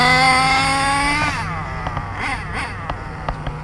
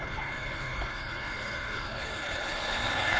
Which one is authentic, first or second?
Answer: first